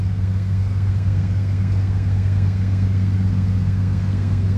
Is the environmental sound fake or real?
fake